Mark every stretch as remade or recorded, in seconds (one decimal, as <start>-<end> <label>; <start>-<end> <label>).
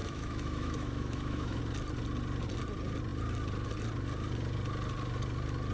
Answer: 0.0-1.6 remade; 1.6-5.7 recorded